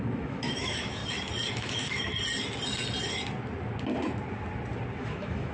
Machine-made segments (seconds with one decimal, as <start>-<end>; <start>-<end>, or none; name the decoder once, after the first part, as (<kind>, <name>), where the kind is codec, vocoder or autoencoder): 0.0-1.0 (autoencoder, DAC-VAE); 1.5-2.1; 5.0-5.5